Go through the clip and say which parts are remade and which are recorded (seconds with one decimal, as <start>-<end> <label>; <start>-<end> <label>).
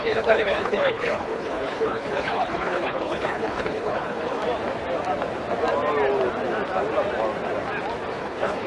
0.0-4.4 remade; 4.4-8.2 recorded; 8.2-8.7 remade